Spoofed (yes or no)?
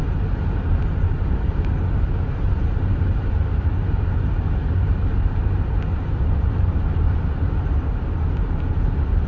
no